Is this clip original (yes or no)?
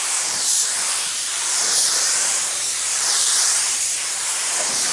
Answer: no